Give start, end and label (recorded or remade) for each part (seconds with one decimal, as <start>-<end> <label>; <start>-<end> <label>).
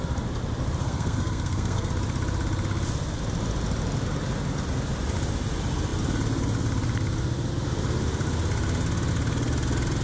0.0-0.8 recorded; 0.8-1.9 remade; 1.9-10.0 recorded